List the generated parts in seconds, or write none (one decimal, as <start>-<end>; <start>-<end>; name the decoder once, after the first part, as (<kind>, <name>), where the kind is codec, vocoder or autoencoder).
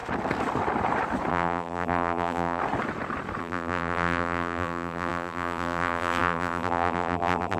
1.3-2.6 (vocoder, BigVGAN v2); 3.4-7.6